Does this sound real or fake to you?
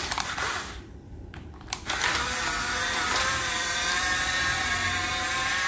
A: fake